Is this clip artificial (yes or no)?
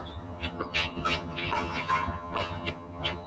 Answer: yes